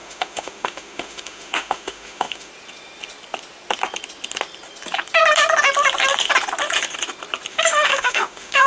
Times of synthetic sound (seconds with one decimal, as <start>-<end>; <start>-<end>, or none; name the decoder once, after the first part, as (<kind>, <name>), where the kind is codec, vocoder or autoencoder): 0.0-2.5 (autoencoder, DAC-VAE); 7.5-8.7